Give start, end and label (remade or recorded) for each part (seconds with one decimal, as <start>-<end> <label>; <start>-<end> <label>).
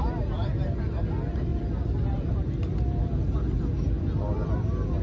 0.0-1.5 recorded; 1.5-2.3 remade; 2.3-5.0 recorded